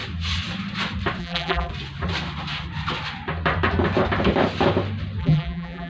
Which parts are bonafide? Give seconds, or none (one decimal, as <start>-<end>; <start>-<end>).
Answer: 0.0-1.2; 1.7-5.2

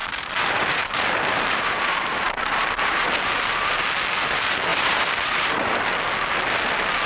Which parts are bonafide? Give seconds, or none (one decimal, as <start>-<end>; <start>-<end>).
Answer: 3.1-4.7; 5.8-7.1

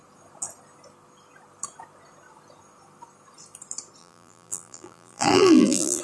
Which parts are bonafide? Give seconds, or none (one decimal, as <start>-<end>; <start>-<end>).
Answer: 0.0-4.0

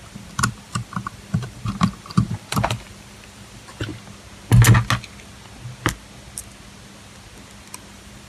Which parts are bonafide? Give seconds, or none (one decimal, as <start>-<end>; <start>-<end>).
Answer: 3.9-7.9